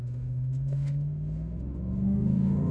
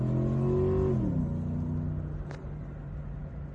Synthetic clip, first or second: first